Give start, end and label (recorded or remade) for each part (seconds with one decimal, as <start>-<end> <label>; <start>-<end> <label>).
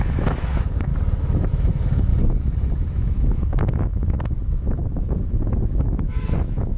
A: 0.0-0.9 remade; 0.9-1.5 recorded; 1.5-2.1 remade; 2.1-2.9 recorded; 2.9-4.8 remade; 4.8-5.7 recorded; 5.7-6.8 remade